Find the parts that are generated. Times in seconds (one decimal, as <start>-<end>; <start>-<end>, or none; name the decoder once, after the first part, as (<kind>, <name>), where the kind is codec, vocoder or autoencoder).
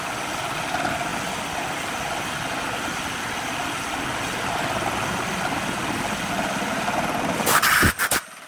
none